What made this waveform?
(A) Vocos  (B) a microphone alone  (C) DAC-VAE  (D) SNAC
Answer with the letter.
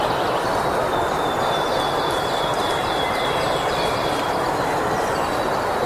B